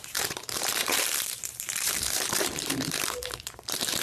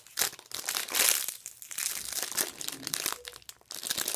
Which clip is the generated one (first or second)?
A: first